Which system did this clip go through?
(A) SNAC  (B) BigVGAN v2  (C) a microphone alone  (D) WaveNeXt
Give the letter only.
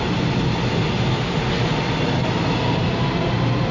C